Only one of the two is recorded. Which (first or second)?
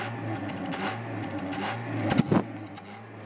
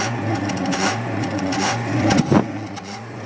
first